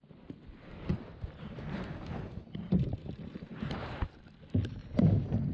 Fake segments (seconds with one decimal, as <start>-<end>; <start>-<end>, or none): 0.9-4.2; 4.8-5.5